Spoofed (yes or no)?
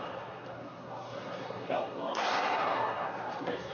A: yes